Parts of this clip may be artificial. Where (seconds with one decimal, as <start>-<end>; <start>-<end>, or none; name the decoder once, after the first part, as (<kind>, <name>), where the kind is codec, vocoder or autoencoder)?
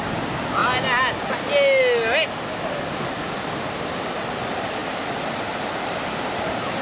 none